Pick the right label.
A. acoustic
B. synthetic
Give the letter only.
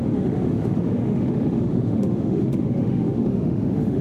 B